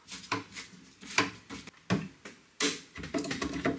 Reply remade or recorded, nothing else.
recorded